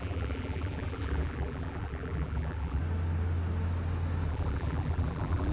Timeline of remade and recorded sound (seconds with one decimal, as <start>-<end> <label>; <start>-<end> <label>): 0.0-2.8 remade; 2.8-4.3 recorded; 4.3-5.5 remade